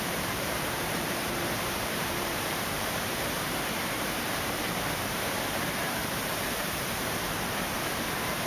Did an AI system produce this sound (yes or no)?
yes